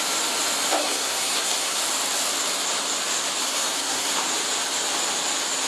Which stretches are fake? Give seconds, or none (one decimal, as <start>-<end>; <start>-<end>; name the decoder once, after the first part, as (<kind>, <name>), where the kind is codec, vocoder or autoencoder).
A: 0.8-1.8 (codec, SNAC); 3.4-4.1